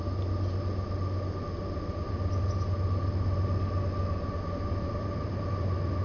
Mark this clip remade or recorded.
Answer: recorded